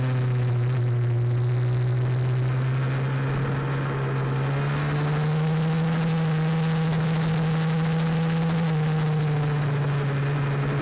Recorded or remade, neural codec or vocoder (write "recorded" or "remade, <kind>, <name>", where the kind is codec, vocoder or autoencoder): recorded